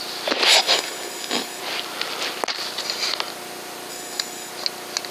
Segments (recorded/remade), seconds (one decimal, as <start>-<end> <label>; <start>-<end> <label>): 0.0-0.5 recorded; 0.5-1.6 remade; 1.6-3.9 recorded; 3.9-4.5 remade; 4.5-5.1 recorded